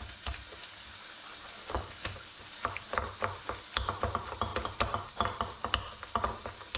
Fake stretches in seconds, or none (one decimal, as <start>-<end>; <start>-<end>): 1.6-2.4